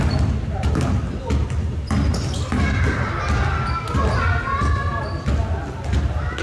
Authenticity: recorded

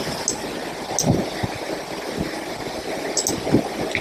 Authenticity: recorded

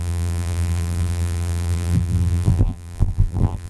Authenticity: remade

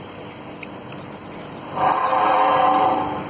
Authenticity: remade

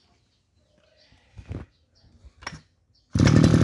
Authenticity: recorded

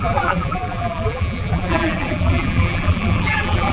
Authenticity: remade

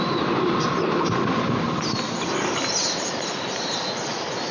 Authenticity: remade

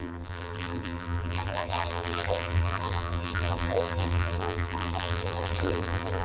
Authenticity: remade